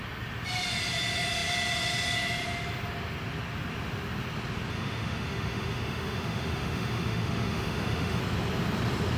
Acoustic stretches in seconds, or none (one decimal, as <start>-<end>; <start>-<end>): 0.0-4.7; 8.2-9.2